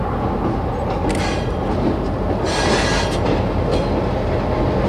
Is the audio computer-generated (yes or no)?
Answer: no